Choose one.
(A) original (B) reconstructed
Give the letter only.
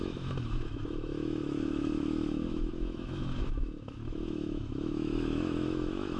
B